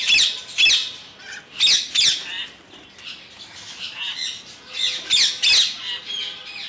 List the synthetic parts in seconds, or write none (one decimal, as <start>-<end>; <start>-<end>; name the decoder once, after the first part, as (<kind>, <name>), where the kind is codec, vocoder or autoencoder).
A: none